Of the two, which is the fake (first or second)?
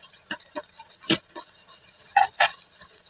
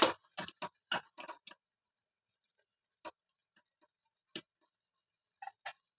first